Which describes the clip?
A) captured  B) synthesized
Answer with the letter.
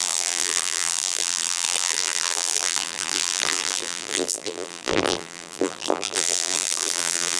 B